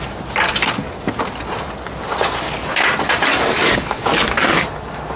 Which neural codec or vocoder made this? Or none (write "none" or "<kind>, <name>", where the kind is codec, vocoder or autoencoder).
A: none